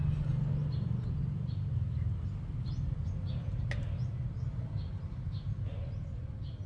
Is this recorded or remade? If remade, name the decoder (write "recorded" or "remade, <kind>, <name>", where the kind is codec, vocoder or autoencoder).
recorded